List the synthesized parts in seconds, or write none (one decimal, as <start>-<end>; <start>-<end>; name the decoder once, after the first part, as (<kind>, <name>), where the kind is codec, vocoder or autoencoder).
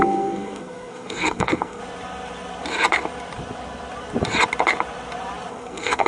0.0-1.8 (codec, SNAC); 5.5-6.1